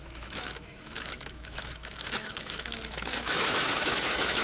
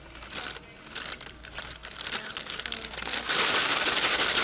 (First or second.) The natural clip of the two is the second